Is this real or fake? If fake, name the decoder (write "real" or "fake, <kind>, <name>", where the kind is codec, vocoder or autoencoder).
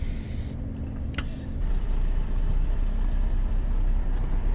fake, vocoder, BigVGAN v2